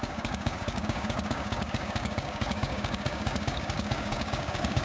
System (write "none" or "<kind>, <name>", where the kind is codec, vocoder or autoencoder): codec, DAC